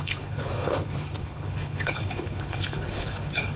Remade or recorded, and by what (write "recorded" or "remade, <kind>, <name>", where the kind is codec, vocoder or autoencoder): remade, codec, HILCodec